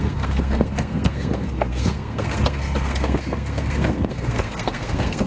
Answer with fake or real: fake